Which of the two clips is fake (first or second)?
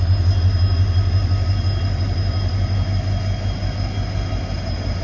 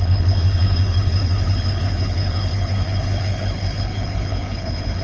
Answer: second